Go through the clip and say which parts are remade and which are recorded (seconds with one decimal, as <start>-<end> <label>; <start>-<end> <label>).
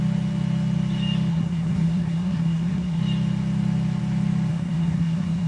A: 0.0-1.3 recorded; 1.3-3.0 remade; 3.0-4.5 recorded; 4.5-5.5 remade